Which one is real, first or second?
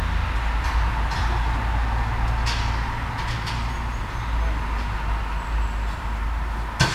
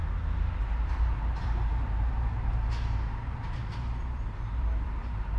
first